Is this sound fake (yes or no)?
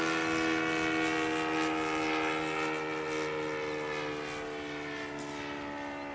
no